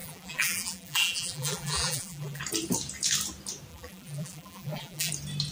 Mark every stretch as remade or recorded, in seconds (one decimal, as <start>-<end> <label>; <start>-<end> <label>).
0.0-2.4 remade; 2.4-3.7 recorded; 3.7-5.1 remade; 5.1-5.5 recorded